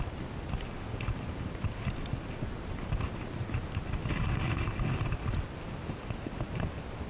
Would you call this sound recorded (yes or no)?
yes